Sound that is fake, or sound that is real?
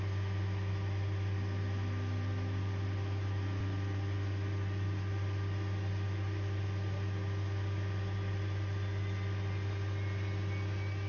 real